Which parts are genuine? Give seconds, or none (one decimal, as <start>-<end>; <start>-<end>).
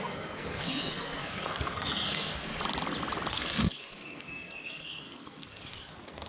2.5-3.3